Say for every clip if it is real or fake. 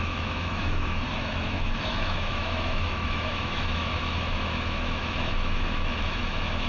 fake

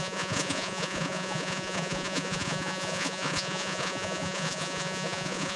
fake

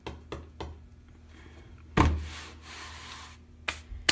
real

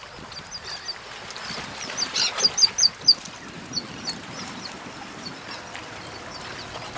real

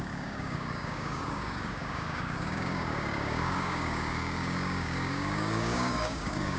fake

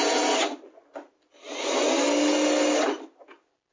real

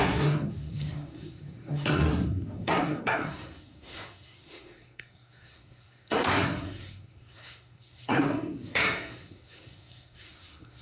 fake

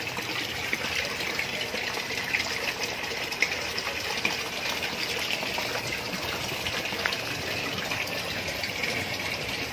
fake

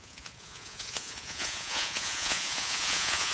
fake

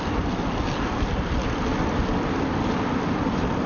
real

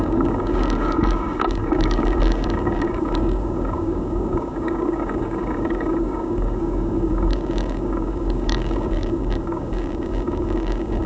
fake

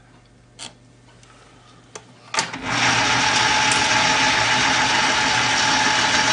real